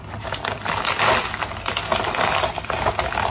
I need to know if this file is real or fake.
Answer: real